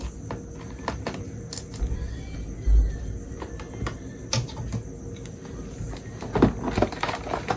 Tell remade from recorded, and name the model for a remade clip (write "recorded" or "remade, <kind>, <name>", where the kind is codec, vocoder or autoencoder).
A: recorded